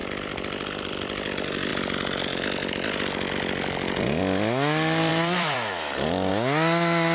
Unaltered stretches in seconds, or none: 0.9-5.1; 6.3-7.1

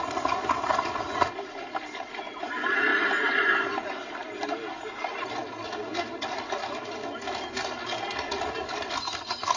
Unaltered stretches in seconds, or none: 0.0-2.9; 4.5-9.6

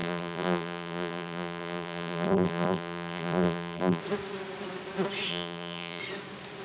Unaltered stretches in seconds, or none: 4.0-5.3; 6.0-6.6

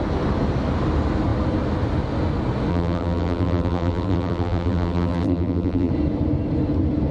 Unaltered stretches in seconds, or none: 0.0-2.7; 5.9-7.1

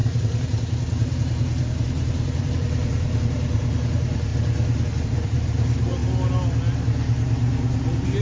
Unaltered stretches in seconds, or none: 4.3-5.0; 6.0-8.2

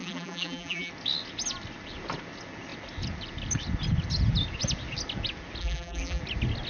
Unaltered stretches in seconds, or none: 0.9-5.6; 6.2-6.7

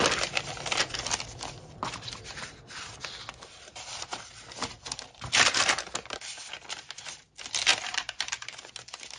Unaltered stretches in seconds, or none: 0.0-1.8; 2.9-7.7; 8.7-9.2